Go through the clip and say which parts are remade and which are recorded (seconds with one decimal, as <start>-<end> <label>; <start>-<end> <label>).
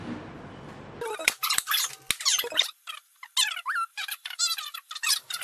0.0-1.2 recorded; 1.2-1.9 remade; 1.9-3.9 recorded; 3.9-5.4 remade